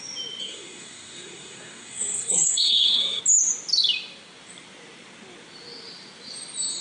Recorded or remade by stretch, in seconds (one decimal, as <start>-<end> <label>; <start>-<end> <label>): 0.0-0.4 recorded; 0.4-3.2 remade; 3.2-6.8 recorded